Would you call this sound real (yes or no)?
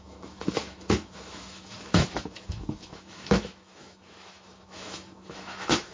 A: no